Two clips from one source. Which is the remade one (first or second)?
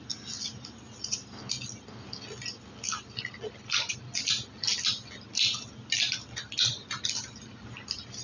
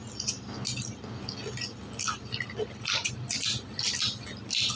second